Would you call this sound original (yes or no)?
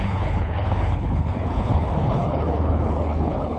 no